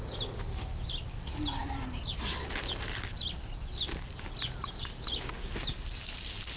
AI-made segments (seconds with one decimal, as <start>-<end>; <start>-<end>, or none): none